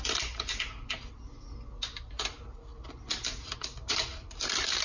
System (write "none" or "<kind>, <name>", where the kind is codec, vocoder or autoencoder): none